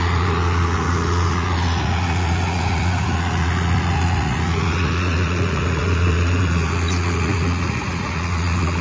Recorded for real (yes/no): no